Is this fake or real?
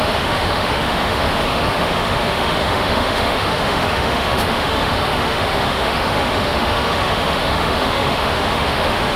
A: fake